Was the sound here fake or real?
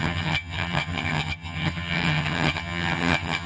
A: fake